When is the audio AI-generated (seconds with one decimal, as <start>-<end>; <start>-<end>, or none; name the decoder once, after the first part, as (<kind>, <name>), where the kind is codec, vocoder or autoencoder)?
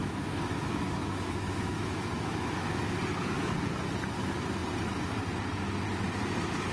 0.0-3.0 (autoencoder, DAC-VAE)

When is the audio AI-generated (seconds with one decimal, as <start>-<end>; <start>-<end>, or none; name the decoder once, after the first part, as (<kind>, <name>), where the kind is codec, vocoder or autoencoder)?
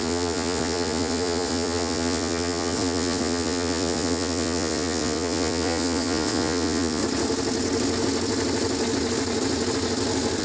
0.0-7.0 (vocoder, Vocos)